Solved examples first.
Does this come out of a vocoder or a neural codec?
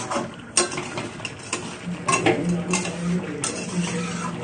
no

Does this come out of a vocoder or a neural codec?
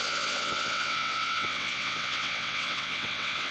yes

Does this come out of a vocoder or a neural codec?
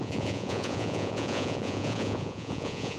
yes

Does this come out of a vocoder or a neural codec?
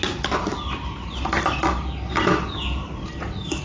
no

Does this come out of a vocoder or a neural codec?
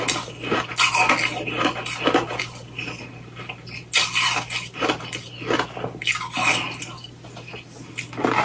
no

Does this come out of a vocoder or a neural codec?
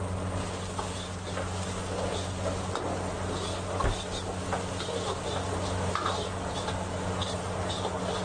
no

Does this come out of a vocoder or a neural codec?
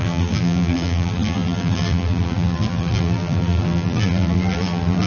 yes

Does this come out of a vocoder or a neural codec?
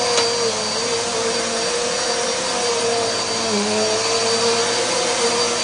no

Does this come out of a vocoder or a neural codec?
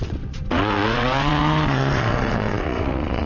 yes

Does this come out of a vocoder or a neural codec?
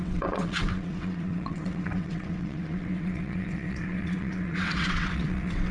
yes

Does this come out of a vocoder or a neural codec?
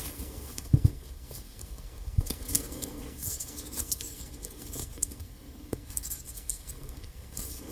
yes